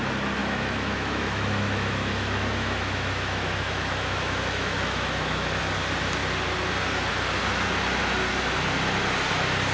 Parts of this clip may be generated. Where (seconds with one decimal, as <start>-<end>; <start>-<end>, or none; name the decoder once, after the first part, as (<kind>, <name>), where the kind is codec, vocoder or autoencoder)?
0.4-5.6 (autoencoder, DAC-VAE)